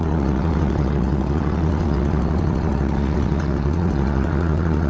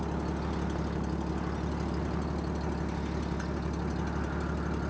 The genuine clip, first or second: second